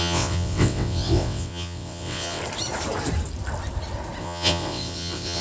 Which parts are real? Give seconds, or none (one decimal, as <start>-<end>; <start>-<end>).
2.4-4.2